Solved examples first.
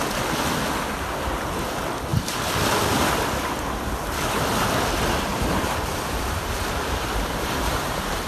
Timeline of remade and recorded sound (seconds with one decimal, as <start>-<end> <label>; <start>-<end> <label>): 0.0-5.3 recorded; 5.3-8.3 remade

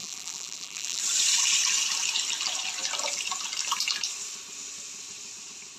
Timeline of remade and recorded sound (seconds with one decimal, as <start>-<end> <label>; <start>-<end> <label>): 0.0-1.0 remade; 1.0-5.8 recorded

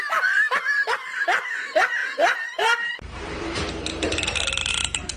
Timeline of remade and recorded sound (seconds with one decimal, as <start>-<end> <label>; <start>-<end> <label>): 0.0-2.0 recorded; 2.0-5.2 remade